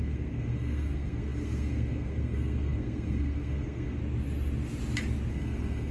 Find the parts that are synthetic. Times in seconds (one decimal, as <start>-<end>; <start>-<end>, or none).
0.0-4.0; 5.3-5.9